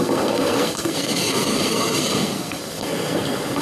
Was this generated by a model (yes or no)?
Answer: yes